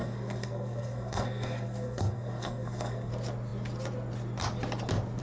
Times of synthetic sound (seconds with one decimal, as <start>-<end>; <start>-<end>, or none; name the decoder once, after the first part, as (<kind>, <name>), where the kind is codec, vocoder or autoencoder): 0.0-3.1 (codec, SNAC)